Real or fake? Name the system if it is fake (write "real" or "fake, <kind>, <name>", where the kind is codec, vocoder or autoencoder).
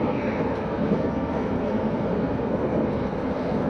fake, codec, SNAC